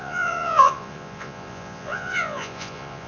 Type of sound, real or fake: fake